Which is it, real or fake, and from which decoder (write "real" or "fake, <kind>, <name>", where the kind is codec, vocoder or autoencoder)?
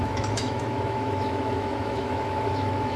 fake, autoencoder, DAC-VAE